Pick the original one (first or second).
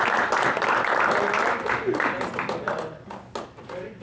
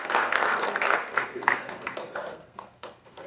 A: first